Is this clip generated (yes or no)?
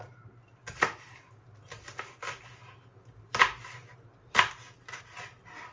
no